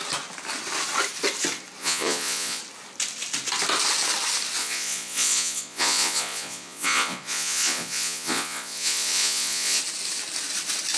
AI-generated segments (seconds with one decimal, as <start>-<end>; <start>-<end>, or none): 1.8-2.6; 4.6-9.8